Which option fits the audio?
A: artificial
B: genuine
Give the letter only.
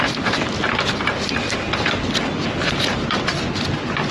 B